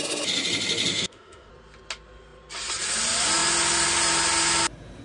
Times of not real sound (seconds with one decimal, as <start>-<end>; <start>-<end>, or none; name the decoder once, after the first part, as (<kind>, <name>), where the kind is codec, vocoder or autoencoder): 0.9-1.5 (autoencoder, DAC-VAE)